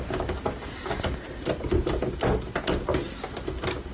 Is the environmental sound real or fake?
real